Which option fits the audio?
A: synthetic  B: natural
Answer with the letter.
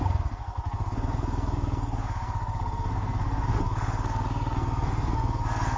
A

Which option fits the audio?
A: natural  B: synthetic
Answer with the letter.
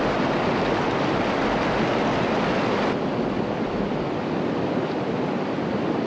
A